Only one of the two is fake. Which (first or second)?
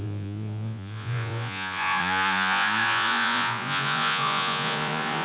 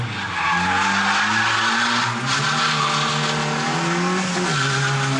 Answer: first